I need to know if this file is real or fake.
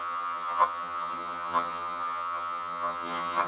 fake